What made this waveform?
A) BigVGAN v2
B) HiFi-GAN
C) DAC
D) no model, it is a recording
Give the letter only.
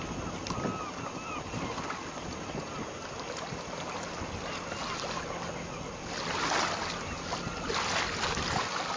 D